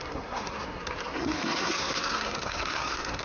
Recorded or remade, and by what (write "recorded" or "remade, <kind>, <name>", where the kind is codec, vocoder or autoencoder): remade, codec, SNAC